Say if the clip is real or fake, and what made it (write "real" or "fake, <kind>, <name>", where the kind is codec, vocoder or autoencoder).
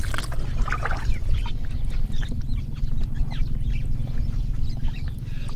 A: real